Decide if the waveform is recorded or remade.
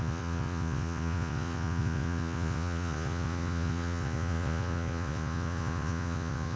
remade